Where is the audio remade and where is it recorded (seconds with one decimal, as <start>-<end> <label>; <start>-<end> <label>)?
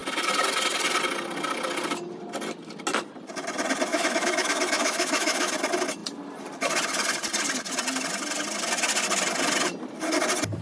0.0-3.9 recorded; 3.9-5.5 remade; 5.5-10.6 recorded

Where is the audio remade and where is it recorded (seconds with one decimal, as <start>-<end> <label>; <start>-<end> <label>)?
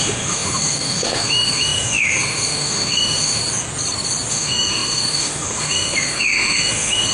0.0-3.4 remade; 3.4-4.3 recorded; 4.3-7.1 remade